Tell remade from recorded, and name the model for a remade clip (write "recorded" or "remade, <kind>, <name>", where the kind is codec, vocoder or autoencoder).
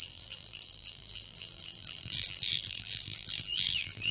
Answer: remade, vocoder, BigVGAN v2